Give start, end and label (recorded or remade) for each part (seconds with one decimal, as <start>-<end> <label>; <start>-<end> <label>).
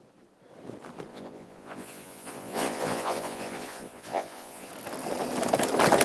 0.0-1.1 recorded; 1.1-4.7 remade; 4.7-6.0 recorded